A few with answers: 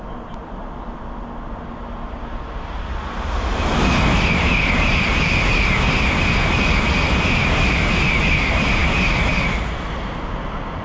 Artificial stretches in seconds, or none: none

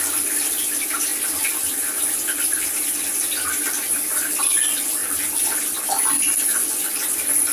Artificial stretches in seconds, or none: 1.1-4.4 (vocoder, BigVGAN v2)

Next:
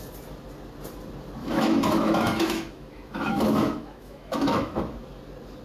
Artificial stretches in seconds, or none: 1.4-4.8 (autoencoder, DAC-VAE)

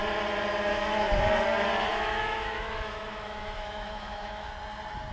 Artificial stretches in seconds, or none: 0.7-1.2 (autoencoder, DAC-VAE); 1.9-4.5